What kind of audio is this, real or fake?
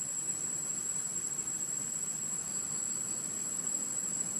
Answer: fake